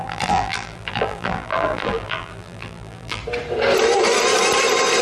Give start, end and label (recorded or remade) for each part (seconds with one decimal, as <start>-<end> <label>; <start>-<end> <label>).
0.0-3.2 remade; 3.2-5.0 recorded